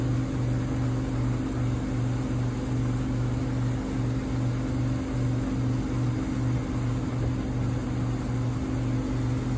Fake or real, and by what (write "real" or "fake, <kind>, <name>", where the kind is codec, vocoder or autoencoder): real